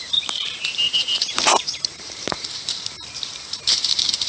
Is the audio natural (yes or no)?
no